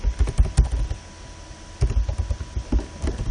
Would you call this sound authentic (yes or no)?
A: yes